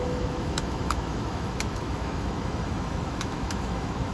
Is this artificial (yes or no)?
yes